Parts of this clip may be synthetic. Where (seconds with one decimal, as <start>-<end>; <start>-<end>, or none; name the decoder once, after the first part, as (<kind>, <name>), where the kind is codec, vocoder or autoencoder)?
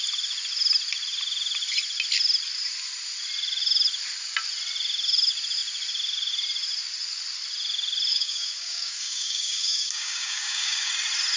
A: 8.1-10.9 (codec, DAC)